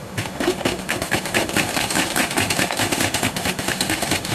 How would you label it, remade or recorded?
remade